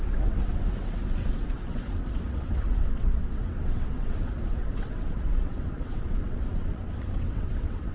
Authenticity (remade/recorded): remade